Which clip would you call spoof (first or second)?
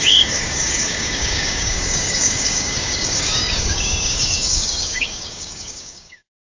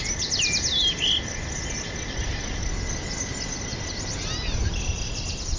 first